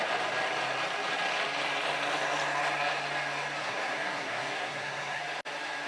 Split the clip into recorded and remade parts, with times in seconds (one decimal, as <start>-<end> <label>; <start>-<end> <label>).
0.0-3.6 recorded; 3.6-5.2 remade; 5.2-5.9 recorded